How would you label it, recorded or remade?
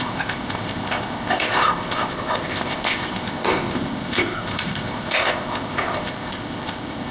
remade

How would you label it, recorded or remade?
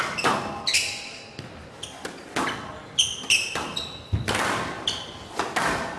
recorded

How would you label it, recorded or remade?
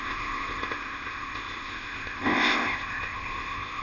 remade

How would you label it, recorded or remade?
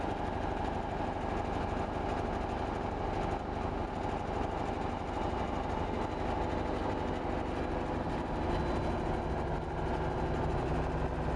recorded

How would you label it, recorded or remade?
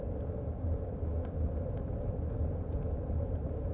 recorded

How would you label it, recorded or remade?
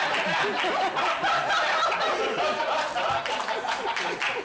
recorded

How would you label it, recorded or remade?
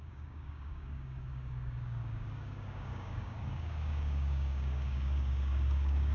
remade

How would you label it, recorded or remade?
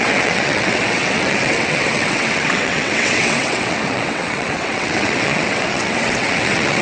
remade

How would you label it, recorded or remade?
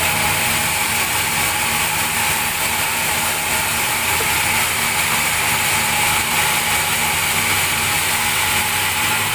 recorded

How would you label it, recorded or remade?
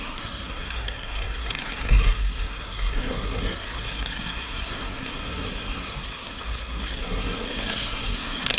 remade